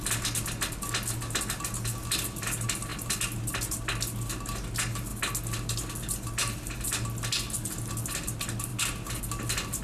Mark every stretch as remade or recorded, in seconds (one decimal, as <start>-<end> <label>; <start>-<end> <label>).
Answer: 0.0-9.8 recorded